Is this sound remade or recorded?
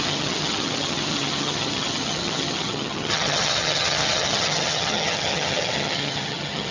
remade